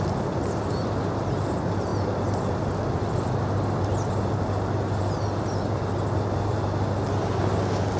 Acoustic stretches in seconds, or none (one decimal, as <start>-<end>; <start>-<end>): 0.0-8.0